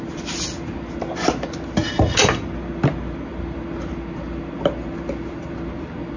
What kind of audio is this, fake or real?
real